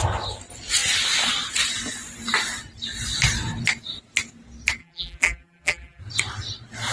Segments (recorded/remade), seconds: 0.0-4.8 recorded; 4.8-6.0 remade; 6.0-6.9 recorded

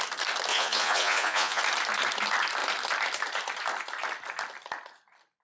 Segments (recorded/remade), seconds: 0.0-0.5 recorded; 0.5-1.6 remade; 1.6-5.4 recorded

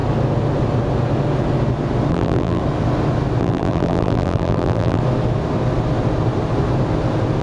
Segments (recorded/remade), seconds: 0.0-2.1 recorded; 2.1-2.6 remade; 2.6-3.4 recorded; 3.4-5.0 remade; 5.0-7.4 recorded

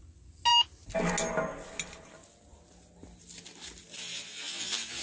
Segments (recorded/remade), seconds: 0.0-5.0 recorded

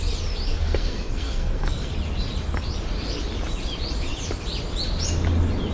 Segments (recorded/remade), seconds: 0.0-0.5 recorded; 0.5-1.9 remade; 1.9-5.7 recorded